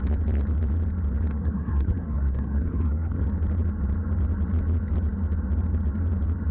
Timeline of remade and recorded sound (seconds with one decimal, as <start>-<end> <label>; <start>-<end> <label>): 0.0-1.3 recorded; 1.3-3.2 remade; 3.2-6.5 recorded